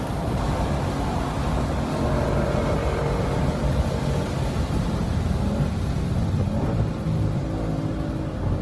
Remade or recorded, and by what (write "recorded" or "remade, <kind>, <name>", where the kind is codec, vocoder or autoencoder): recorded